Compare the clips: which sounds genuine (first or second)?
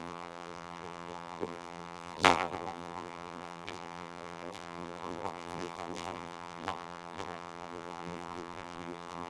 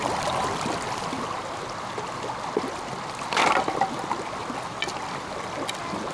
second